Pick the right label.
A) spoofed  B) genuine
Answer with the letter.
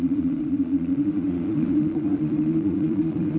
A